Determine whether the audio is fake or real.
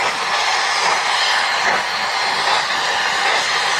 real